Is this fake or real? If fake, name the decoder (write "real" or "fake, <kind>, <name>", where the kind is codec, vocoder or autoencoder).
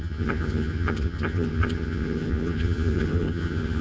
fake, vocoder, HiFi-GAN